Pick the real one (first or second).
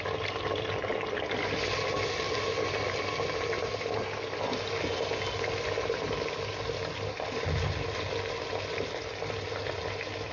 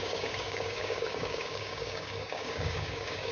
first